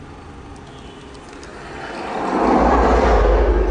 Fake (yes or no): no